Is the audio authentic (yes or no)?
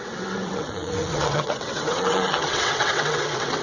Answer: no